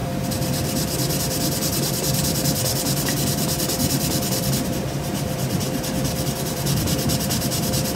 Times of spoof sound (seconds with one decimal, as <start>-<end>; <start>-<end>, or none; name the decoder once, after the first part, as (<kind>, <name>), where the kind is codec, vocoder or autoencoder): 0.0-8.0 (vocoder, BigVGAN v2)